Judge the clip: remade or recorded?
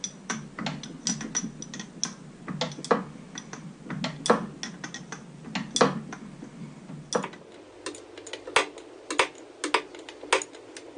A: recorded